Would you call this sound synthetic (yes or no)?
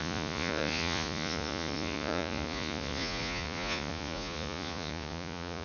yes